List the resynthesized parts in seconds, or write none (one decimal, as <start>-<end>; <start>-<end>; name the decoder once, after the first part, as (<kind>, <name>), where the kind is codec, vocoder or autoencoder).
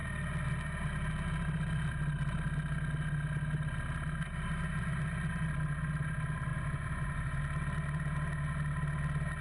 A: 6.5-7.4 (vocoder, Vocos)